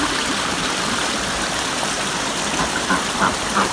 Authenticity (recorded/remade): remade